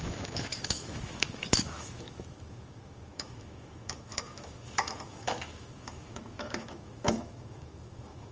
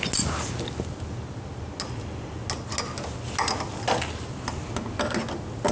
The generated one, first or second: first